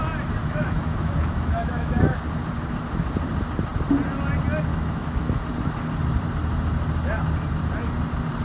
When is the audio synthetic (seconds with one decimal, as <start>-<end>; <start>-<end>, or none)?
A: 0.4-2.2; 4.7-5.4